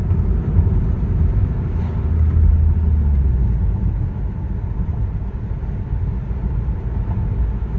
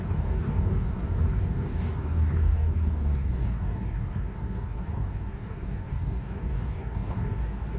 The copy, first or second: second